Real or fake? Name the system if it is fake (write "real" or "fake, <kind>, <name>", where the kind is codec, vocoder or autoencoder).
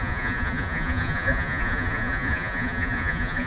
fake, vocoder, Vocos